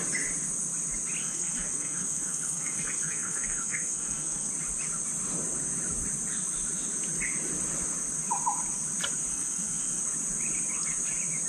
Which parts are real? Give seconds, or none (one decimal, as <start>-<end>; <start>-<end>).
0.0-1.2; 4.5-9.3; 10.0-11.5